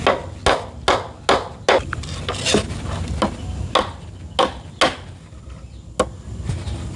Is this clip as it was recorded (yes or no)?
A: yes